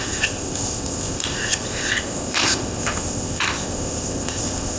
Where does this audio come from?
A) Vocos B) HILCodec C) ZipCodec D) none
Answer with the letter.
C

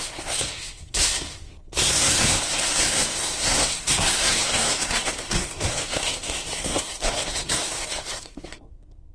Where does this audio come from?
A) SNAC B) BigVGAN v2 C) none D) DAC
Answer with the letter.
A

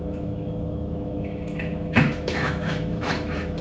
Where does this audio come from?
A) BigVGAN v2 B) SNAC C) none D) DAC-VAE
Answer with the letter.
D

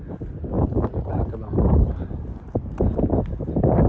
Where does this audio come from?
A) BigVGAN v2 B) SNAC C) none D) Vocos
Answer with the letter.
C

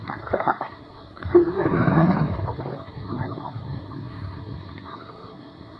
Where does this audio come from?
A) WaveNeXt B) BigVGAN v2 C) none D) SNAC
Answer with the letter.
D